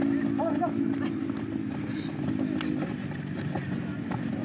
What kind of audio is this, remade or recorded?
recorded